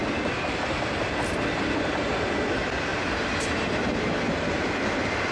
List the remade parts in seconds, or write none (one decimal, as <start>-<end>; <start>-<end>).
2.9-4.1

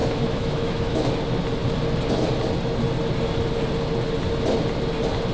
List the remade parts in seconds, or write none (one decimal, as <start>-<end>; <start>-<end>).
0.0-1.1

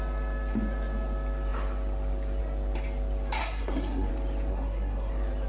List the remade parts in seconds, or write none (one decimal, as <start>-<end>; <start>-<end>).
3.4-4.1; 4.5-5.1